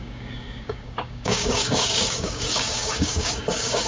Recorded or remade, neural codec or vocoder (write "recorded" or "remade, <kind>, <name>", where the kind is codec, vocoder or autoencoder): remade, codec, DAC